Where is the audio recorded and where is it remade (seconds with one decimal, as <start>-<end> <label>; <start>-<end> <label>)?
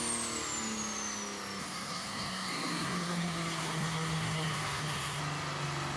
0.0-1.6 recorded; 1.6-5.2 remade; 5.2-6.0 recorded